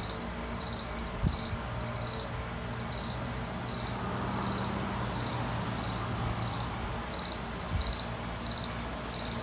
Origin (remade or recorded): recorded